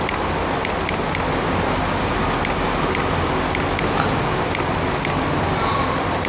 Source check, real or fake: real